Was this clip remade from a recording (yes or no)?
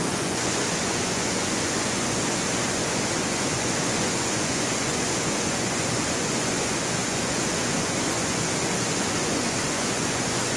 yes